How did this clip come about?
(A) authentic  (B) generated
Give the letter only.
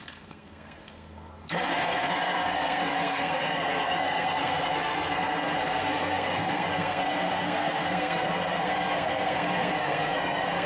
B